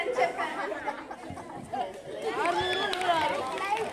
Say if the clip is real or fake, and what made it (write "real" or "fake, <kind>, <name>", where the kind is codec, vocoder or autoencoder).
real